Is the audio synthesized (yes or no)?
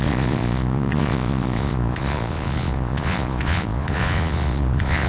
yes